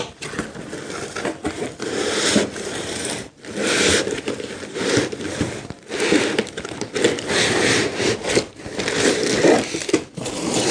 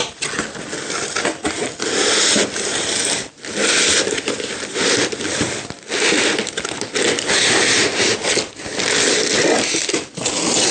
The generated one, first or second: first